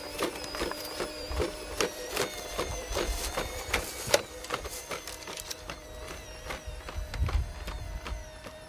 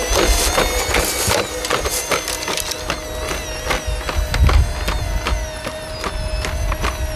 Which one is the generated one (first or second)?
first